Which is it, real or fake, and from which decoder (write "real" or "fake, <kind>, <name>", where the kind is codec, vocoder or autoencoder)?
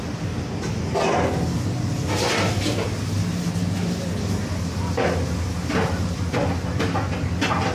real